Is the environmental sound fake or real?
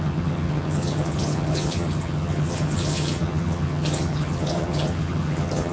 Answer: fake